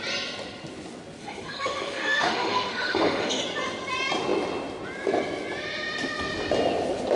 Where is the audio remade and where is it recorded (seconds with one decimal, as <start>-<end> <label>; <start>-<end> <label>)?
0.0-1.2 recorded; 1.2-3.4 remade; 3.4-7.2 recorded